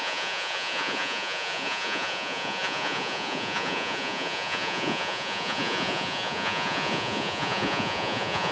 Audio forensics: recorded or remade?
remade